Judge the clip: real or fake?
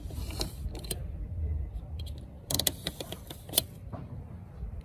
fake